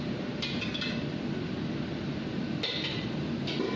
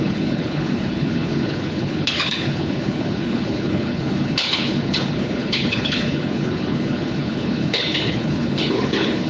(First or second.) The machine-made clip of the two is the second